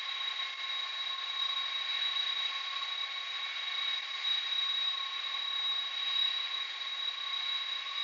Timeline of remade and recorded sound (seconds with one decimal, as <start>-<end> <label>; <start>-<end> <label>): 0.0-8.0 recorded